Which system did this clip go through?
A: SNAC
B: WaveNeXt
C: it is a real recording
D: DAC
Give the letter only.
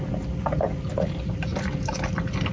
C